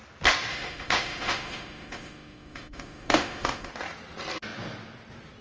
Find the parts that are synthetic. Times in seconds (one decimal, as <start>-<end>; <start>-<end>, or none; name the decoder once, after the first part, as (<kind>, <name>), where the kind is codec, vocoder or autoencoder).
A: 0.5-3.7 (autoencoder, DAC-VAE)